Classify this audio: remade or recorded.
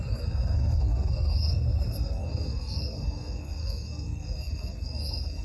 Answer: remade